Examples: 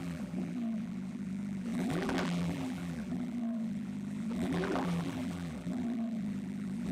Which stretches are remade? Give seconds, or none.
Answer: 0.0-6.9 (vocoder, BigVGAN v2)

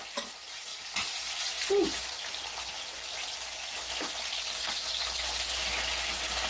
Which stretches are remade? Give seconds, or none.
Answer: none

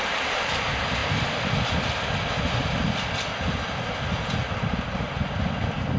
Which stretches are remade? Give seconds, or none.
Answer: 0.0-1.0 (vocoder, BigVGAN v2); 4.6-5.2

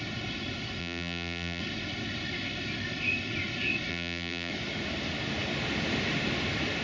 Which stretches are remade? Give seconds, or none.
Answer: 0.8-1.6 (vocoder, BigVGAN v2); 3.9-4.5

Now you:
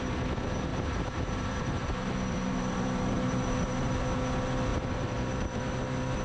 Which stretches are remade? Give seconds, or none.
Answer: 0.7-4.0 (vocoder, BigVGAN v2); 4.7-5.6